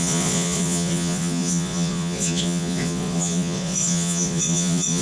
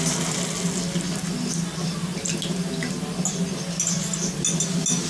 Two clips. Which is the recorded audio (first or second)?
second